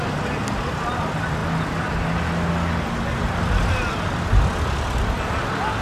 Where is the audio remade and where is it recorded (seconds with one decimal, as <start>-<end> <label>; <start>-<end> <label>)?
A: 0.0-5.8 recorded